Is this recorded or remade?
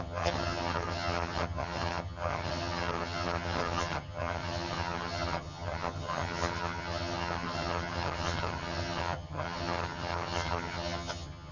remade